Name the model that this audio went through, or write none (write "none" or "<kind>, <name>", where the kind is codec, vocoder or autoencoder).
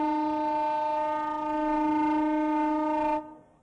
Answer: none